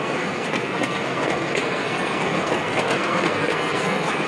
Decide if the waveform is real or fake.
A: fake